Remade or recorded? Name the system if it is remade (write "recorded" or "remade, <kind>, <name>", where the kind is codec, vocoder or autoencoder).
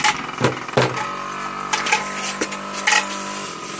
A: recorded